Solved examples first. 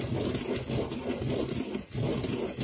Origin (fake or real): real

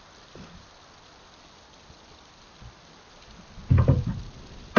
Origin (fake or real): real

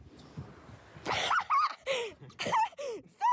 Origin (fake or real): real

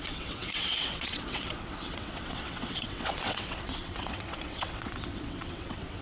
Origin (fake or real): fake